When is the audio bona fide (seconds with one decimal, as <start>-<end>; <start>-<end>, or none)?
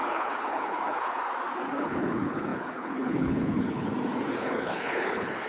1.2-1.7; 3.9-4.4